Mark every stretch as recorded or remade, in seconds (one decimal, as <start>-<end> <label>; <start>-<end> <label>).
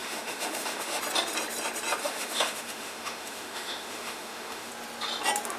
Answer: 0.0-1.0 remade; 1.0-2.0 recorded; 2.0-4.7 remade; 4.7-5.6 recorded